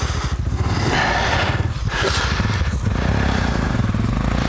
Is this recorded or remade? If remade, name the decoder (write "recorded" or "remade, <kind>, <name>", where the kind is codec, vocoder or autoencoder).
recorded